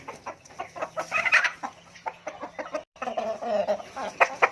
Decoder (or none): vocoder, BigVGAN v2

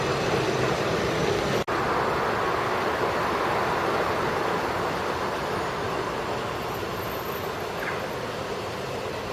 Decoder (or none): none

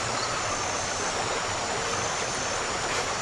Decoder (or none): vocoder, BigVGAN v2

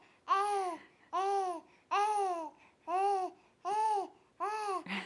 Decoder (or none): none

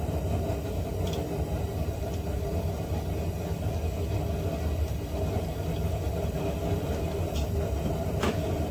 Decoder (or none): none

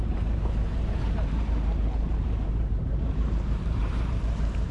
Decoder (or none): vocoder, BigVGAN v2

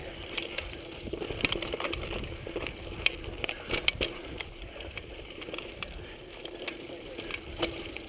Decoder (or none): none